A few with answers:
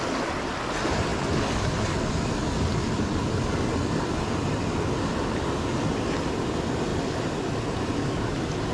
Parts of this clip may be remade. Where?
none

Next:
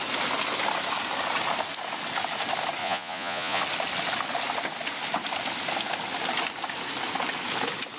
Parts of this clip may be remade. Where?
2.8-3.6

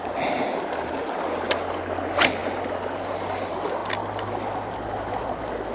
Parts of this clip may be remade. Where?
none